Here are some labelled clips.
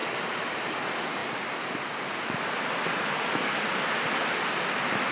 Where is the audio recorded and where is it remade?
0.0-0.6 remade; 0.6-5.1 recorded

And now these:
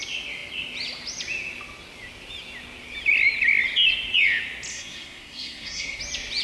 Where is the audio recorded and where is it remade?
0.0-4.7 recorded; 4.7-6.0 remade; 6.0-6.4 recorded

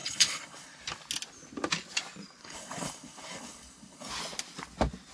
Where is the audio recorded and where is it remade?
0.0-0.8 remade; 0.8-2.4 recorded; 2.4-4.1 remade; 4.1-5.1 recorded

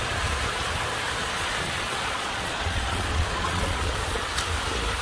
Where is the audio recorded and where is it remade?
0.0-1.2 recorded; 1.2-4.2 remade; 4.2-5.0 recorded

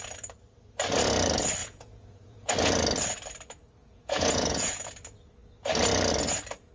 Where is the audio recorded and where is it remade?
0.0-1.6 recorded; 1.6-2.5 remade; 2.5-3.8 recorded; 3.8-4.9 remade; 4.9-6.7 recorded

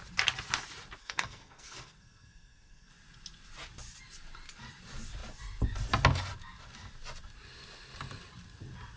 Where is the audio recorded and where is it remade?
0.0-1.0 recorded; 1.0-2.9 remade; 2.9-9.0 recorded

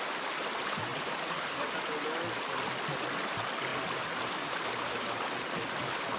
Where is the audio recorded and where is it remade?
0.0-6.2 recorded

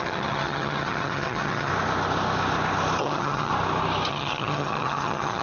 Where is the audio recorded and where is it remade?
0.0-1.7 remade; 1.7-3.0 recorded; 3.0-3.5 remade; 3.5-4.1 recorded; 4.1-5.4 remade